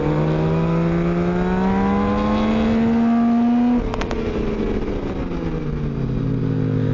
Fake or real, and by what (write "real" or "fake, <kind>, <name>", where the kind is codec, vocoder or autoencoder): real